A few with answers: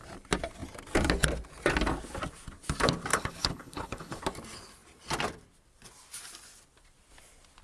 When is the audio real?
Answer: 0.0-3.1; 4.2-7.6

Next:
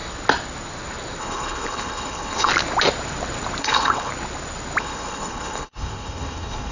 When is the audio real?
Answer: 0.0-1.2; 2.5-3.6; 4.1-4.8

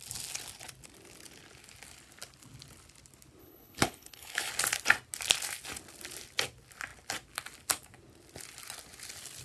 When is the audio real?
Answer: 0.0-3.4; 4.5-9.4

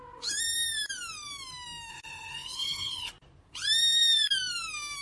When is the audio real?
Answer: 0.0-1.9; 3.1-5.0

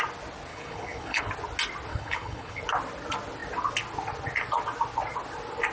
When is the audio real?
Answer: 0.0-0.5; 1.3-1.9; 2.6-5.7